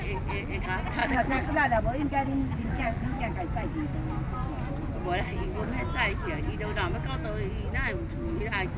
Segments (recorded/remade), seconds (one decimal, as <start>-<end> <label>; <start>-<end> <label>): 0.0-1.0 recorded; 1.0-1.5 remade; 1.5-2.4 recorded; 2.4-3.2 remade; 3.2-8.8 recorded